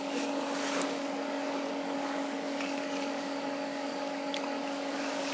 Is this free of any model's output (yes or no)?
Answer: no